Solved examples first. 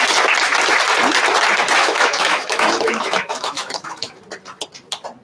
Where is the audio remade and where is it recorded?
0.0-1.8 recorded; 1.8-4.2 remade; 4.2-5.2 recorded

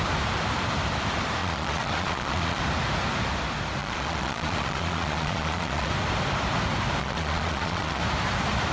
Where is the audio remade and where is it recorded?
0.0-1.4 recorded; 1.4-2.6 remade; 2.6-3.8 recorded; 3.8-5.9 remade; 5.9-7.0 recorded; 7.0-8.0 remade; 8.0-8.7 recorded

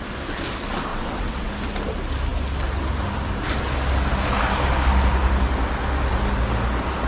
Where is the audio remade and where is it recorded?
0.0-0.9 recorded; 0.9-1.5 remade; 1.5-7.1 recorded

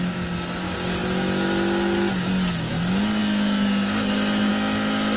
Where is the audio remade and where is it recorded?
0.0-5.2 recorded

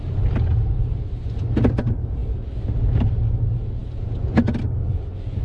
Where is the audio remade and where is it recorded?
0.0-5.4 recorded

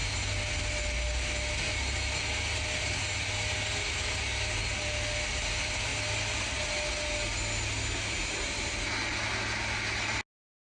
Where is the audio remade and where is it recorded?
0.0-10.7 recorded